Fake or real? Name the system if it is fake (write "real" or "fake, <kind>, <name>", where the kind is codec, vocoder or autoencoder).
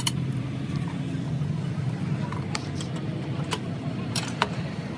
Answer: fake, vocoder, BigVGAN v2